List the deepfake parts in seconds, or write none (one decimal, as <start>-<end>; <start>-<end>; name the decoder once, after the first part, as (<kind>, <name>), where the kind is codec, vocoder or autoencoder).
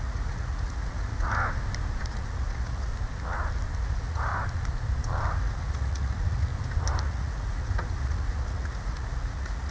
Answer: 0.0-1.3 (vocoder, Vocos); 2.0-2.9; 3.8-4.3; 5.3-6.5; 7.0-9.7